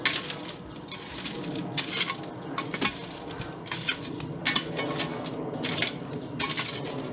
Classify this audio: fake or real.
real